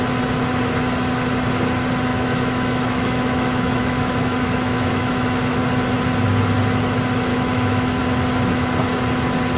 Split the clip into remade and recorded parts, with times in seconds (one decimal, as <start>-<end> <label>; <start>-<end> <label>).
0.0-2.1 recorded; 2.1-5.6 remade; 5.6-7.3 recorded; 7.3-8.0 remade; 8.0-9.6 recorded